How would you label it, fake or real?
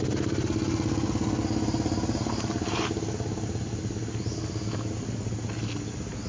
real